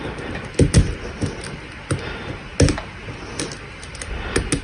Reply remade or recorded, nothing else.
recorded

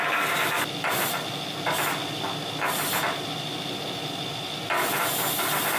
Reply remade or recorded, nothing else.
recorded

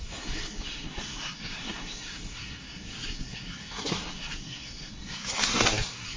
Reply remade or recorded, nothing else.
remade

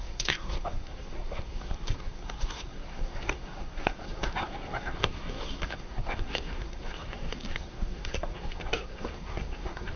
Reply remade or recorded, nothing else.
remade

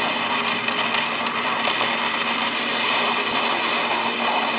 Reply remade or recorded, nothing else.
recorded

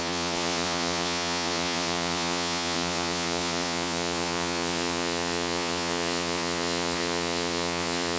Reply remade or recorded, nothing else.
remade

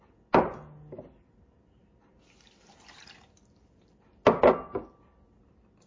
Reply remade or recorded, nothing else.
recorded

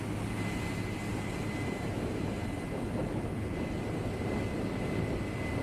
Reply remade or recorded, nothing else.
recorded